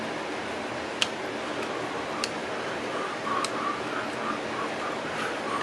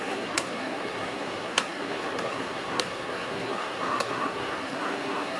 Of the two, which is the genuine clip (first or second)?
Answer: first